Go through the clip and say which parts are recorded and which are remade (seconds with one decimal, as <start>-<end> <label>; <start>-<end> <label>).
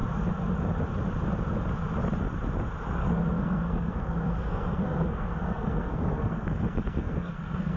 0.0-3.0 recorded; 3.0-7.8 remade